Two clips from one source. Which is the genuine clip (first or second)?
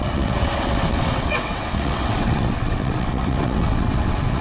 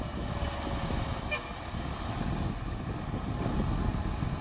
second